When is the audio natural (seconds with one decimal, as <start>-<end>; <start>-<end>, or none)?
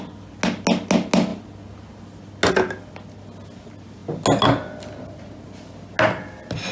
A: 0.0-6.7